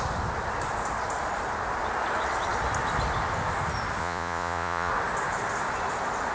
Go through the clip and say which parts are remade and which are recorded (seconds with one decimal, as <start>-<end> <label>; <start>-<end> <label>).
0.0-4.0 recorded; 4.0-4.9 remade; 4.9-6.3 recorded

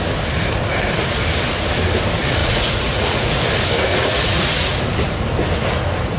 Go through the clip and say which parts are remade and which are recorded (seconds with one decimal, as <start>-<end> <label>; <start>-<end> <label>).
0.0-2.4 recorded; 2.4-3.4 remade; 3.4-3.9 recorded; 3.9-4.8 remade; 4.8-6.2 recorded

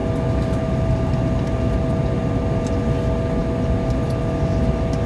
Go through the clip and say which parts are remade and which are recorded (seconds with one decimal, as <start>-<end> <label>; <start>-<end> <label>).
0.0-5.1 recorded

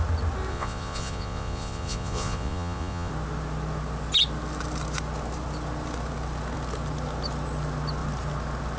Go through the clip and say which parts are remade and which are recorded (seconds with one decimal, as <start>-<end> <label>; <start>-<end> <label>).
0.0-0.5 recorded; 0.5-3.1 remade; 3.1-8.8 recorded

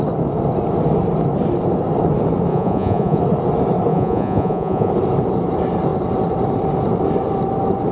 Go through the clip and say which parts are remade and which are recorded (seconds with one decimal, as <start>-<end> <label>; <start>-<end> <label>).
0.0-2.5 recorded; 2.5-3.2 remade; 3.2-3.9 recorded; 3.9-4.9 remade; 4.9-7.9 recorded

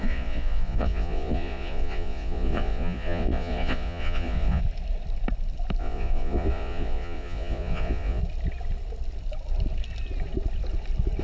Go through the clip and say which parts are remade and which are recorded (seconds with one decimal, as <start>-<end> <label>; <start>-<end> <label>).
0.0-4.6 remade; 4.6-5.8 recorded; 5.8-8.2 remade; 8.2-11.2 recorded